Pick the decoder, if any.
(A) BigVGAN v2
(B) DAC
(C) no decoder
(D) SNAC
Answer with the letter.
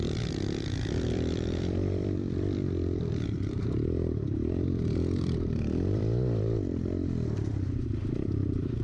A